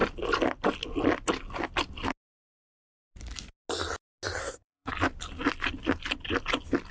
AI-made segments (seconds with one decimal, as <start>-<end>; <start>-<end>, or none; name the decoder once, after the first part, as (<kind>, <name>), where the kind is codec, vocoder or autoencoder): 4.4-4.9 (codec, SNAC)